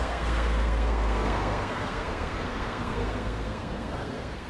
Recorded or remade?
remade